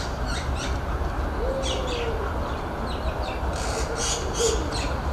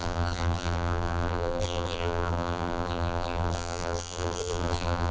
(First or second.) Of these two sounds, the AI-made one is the second